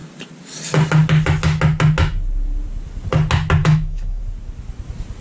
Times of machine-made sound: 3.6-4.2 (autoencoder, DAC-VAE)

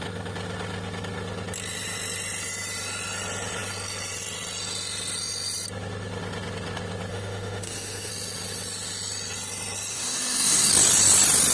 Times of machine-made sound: 7.1-8.1 (autoencoder, DAC-VAE); 9.9-10.7

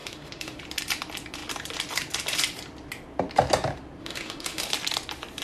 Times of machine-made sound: 0.0-0.6 (autoencoder, DAC-VAE); 4.0-4.7

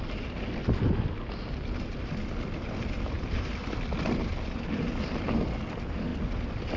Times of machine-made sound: none

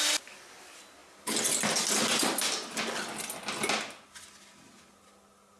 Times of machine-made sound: none